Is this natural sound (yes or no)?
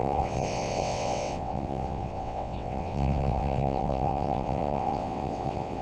no